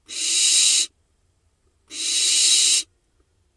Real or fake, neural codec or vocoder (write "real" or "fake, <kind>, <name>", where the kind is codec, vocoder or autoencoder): real